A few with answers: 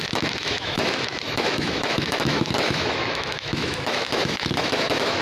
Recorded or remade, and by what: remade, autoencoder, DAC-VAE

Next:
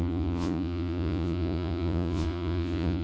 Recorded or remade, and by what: remade, vocoder, Vocos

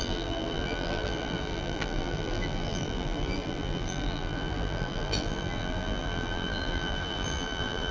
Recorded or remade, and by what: remade, vocoder, BigVGAN v2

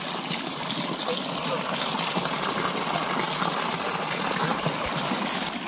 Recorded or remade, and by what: recorded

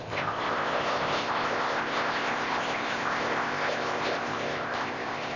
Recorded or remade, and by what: remade, codec, ZipCodec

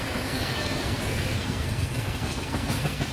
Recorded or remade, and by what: remade, codec, SNAC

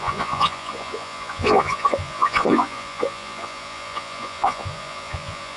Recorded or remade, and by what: remade, vocoder, Vocos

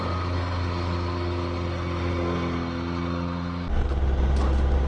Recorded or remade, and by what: recorded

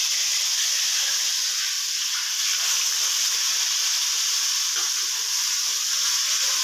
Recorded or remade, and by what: recorded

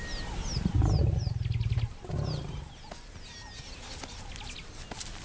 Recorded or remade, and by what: recorded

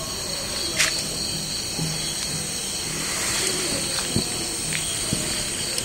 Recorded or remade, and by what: recorded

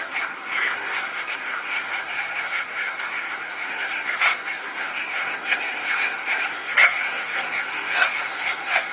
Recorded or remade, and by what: remade, codec, SNAC